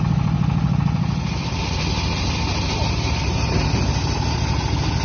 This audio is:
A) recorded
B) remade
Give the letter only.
A